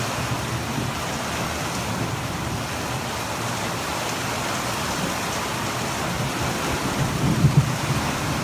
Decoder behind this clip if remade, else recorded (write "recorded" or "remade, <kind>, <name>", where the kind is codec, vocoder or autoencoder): recorded